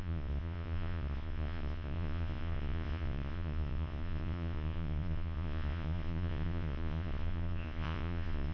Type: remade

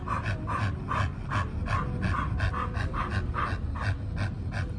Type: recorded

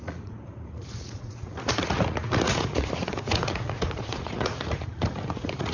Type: remade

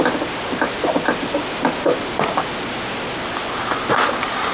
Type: recorded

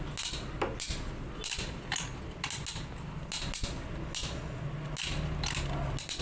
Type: recorded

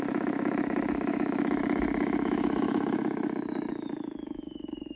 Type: remade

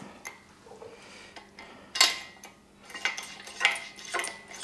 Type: recorded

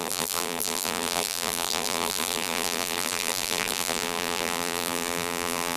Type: remade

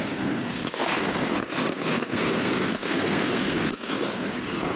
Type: remade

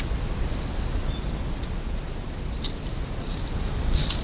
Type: recorded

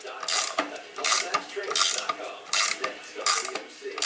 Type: remade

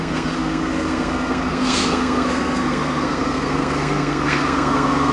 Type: remade